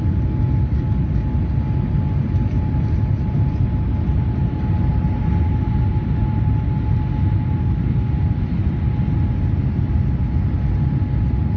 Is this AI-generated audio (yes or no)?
no